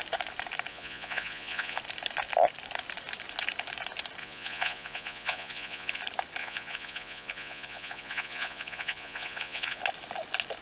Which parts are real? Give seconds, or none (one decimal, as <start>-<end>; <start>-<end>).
0.0-0.7; 1.8-4.2; 6.0-6.4; 9.8-10.6